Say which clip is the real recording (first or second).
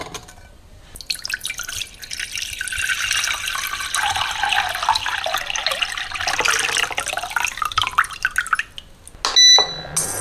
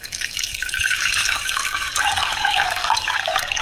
first